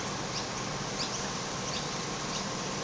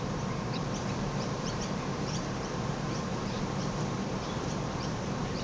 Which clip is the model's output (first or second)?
second